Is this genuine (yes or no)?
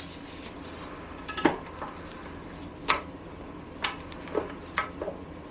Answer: yes